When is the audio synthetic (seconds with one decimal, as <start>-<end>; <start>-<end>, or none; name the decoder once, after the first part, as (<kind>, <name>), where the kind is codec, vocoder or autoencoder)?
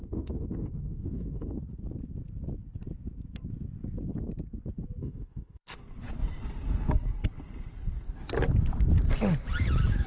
0.0-1.6 (autoencoder, DAC-VAE); 5.0-5.8